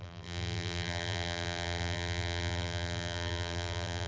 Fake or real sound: fake